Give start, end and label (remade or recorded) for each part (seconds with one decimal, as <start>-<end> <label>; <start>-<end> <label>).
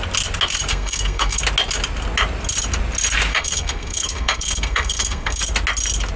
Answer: 0.0-0.7 recorded; 0.7-1.4 remade; 1.4-3.3 recorded; 3.3-5.4 remade; 5.4-6.2 recorded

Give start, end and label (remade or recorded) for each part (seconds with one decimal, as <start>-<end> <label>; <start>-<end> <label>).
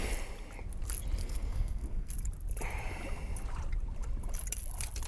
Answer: 0.0-1.2 recorded; 1.2-2.1 remade; 2.1-5.1 recorded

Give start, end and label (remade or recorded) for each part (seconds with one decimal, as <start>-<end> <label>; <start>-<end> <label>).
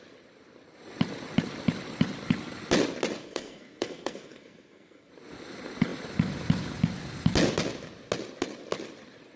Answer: 0.0-3.2 recorded; 3.2-5.1 remade; 5.1-9.4 recorded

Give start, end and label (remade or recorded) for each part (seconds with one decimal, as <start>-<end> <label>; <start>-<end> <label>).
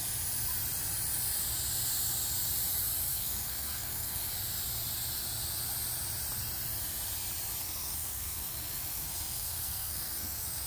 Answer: 0.0-3.1 recorded; 3.1-4.3 remade; 4.3-7.6 recorded; 7.6-10.7 remade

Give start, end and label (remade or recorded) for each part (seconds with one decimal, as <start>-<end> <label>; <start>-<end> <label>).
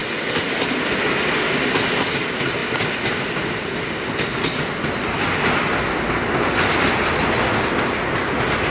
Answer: 0.0-8.7 recorded